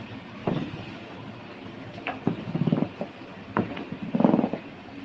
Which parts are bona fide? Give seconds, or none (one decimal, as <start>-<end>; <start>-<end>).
none

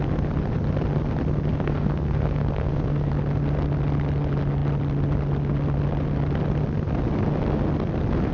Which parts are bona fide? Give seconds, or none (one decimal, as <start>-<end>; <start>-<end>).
0.0-1.5; 3.1-8.3

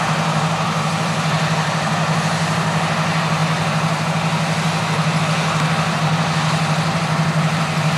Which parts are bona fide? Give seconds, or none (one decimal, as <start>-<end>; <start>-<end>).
0.0-8.0

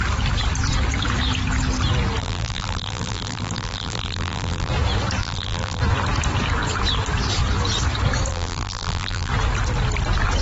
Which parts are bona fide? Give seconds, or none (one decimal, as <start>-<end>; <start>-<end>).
0.0-2.2; 4.7-5.2; 5.8-8.3; 9.3-10.4

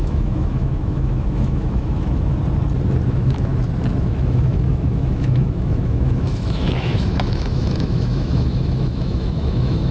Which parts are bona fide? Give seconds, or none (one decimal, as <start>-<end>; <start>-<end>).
2.3-3.1; 3.5-4.0